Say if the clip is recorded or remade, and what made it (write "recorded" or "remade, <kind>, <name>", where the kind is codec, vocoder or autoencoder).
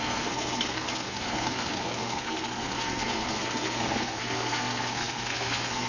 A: remade, codec, SNAC